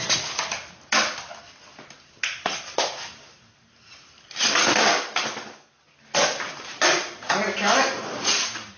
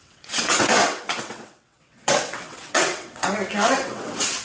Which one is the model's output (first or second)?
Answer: second